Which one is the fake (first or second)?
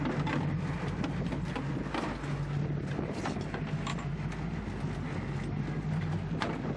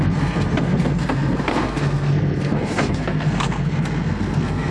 second